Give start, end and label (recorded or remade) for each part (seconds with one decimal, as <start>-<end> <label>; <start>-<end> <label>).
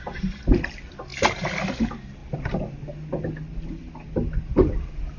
0.0-5.2 recorded